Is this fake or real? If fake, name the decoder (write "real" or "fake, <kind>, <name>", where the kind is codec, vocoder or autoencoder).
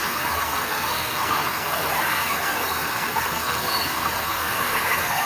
fake, codec, SNAC